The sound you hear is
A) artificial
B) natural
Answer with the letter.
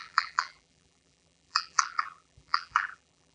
A